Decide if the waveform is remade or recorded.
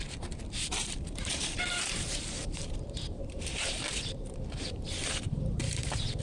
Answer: remade